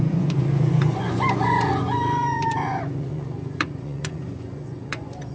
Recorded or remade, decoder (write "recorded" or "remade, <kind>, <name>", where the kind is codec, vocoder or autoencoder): remade, vocoder, Vocos